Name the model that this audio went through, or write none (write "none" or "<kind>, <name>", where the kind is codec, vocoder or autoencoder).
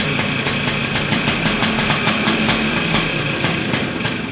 none